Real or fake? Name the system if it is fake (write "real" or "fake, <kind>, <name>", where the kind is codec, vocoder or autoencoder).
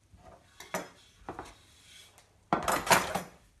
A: real